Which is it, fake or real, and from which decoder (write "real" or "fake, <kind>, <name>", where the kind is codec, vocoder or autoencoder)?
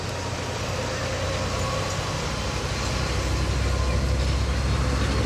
real